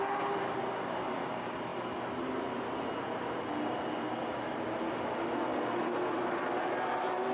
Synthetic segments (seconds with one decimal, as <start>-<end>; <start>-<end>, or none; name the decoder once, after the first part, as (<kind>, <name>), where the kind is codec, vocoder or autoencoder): 4.2-4.8 (vocoder, BigVGAN v2)